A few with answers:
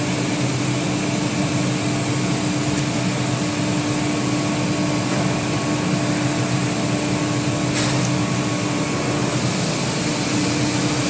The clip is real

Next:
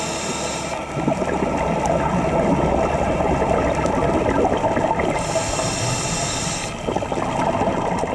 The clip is real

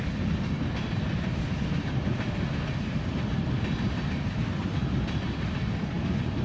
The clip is real